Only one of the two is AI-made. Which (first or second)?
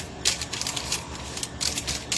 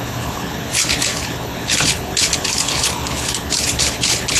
second